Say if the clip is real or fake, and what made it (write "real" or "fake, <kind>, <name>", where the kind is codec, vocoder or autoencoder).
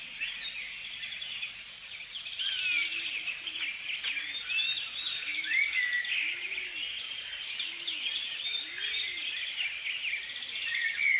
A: real